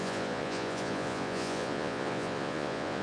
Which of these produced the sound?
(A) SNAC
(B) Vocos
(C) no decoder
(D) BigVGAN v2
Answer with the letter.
B